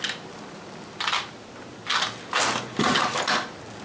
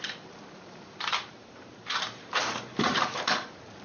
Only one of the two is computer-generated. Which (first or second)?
second